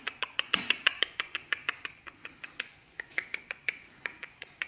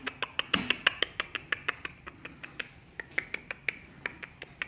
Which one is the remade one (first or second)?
first